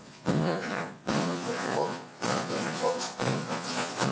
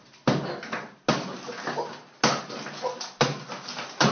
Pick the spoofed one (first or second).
first